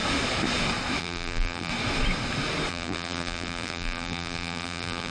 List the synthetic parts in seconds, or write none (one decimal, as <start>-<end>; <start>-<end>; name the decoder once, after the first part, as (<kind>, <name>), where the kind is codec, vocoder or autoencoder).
1.0-1.7 (vocoder, BigVGAN v2); 2.7-5.1